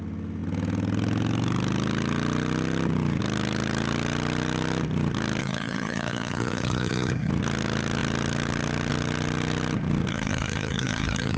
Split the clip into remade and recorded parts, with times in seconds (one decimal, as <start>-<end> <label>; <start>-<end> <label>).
0.0-5.4 recorded; 5.4-7.3 remade; 7.3-10.1 recorded; 10.1-11.4 remade